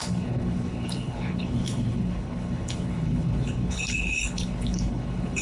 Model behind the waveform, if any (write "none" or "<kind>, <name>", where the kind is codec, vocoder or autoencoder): codec, HILCodec